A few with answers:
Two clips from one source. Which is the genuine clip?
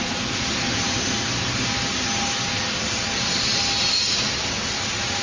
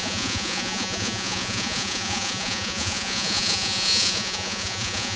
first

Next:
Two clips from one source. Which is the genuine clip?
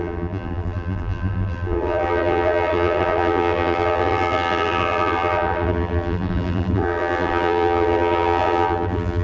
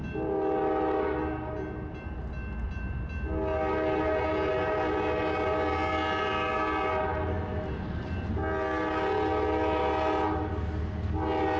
second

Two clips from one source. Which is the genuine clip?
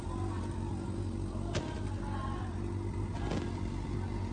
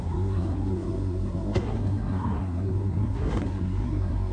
first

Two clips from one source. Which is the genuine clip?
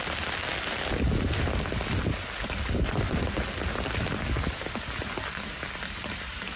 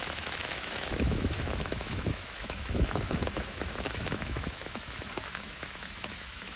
first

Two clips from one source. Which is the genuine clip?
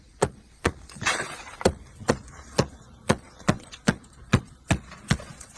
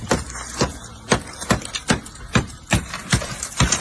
second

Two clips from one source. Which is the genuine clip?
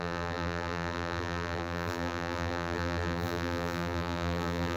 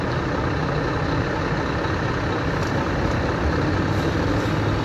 second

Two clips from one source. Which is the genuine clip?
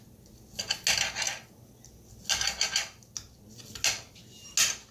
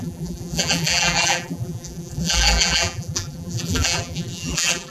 first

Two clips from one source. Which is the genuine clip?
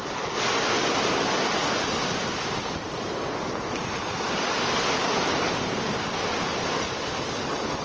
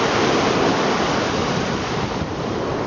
first